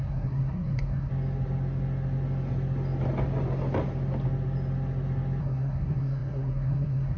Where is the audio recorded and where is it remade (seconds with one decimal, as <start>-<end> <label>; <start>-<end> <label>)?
0.0-1.1 remade; 1.1-5.4 recorded; 5.4-7.2 remade